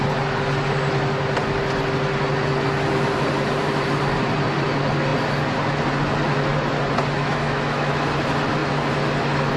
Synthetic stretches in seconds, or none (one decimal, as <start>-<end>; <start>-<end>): 7.2-7.9